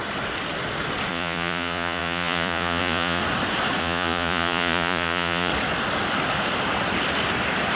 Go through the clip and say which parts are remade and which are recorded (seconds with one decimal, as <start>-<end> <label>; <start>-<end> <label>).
0.0-1.1 recorded; 1.1-3.2 remade; 3.2-3.8 recorded; 3.8-5.5 remade; 5.5-7.8 recorded